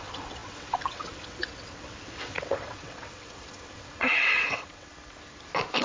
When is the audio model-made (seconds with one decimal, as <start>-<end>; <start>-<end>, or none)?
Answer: 0.0-4.9